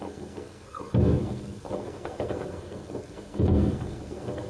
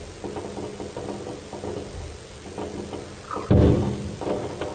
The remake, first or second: first